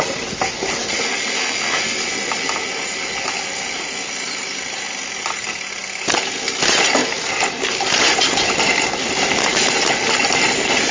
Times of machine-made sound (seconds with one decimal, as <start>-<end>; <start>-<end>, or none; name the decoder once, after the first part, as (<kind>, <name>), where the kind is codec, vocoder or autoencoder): none